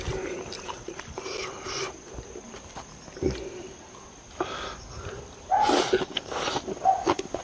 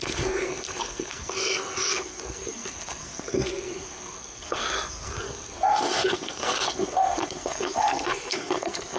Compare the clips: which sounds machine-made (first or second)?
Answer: second